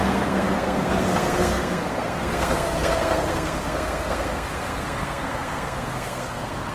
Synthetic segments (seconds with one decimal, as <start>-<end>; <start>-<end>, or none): 0.0-6.7